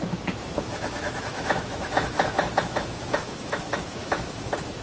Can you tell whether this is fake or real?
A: fake